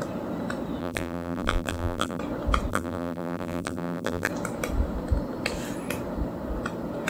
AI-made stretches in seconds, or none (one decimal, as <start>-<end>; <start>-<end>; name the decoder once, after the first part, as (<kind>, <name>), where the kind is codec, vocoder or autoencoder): 0.8-2.2 (vocoder, BigVGAN v2); 2.7-4.3

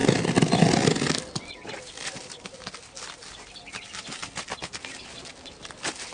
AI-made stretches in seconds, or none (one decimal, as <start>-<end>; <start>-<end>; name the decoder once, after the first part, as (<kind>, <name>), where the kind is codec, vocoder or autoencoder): none

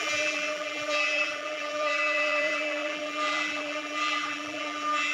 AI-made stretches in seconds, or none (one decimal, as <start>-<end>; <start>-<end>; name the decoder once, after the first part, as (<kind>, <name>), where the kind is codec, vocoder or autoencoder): 0.0-5.1 (vocoder, BigVGAN v2)

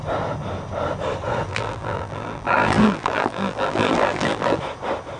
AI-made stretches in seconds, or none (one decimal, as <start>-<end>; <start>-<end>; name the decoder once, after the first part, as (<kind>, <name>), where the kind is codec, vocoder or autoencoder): 1.5-4.6 (vocoder, BigVGAN v2)